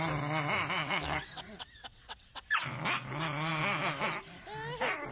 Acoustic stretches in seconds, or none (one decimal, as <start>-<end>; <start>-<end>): 0.0-0.8; 2.6-5.1